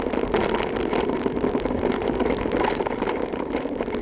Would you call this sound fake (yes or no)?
no